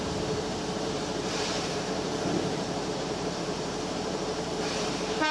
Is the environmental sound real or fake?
fake